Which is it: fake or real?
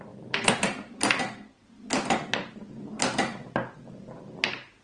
real